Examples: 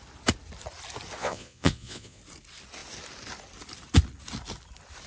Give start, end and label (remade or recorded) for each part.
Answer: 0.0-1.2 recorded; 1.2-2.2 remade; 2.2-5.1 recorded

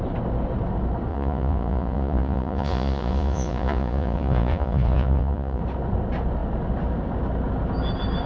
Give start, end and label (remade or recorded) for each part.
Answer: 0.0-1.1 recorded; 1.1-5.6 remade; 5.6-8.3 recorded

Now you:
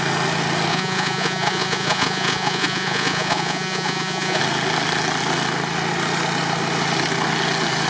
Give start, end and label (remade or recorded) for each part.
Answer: 0.0-0.7 recorded; 0.7-4.4 remade; 4.4-7.9 recorded